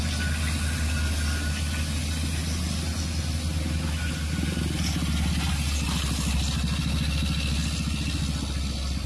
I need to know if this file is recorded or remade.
recorded